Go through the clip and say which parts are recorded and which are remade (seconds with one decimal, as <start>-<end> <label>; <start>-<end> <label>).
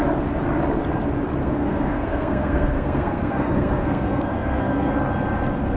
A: 0.0-1.4 recorded; 1.4-4.9 remade; 4.9-5.8 recorded